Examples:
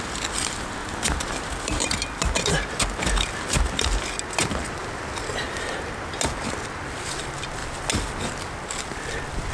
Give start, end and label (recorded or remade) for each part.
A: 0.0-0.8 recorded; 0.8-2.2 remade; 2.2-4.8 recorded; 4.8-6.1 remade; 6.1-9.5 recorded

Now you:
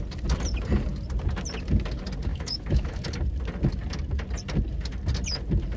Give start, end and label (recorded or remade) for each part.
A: 0.0-2.3 recorded; 2.3-3.0 remade; 3.0-5.8 recorded

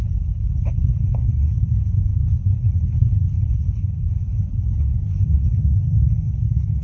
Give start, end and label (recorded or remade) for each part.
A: 0.0-5.5 remade; 5.5-6.3 recorded; 6.3-6.8 remade

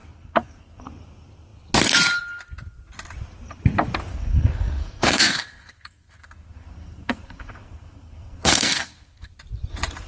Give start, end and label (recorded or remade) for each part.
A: 0.0-0.8 remade; 0.8-4.1 recorded; 4.1-9.3 remade; 9.3-10.1 recorded

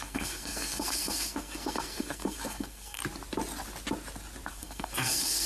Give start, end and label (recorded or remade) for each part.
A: 0.0-3.0 remade; 3.0-4.5 recorded; 4.5-5.5 remade

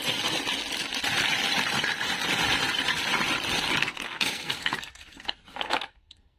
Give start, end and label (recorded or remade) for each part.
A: 0.0-3.8 recorded; 3.8-6.4 remade

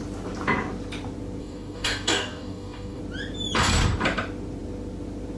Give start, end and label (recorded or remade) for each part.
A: 0.0-1.4 recorded; 1.4-3.0 remade; 3.0-5.4 recorded

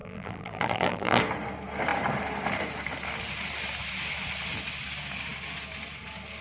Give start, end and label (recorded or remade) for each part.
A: 0.0-1.2 remade; 1.2-6.4 recorded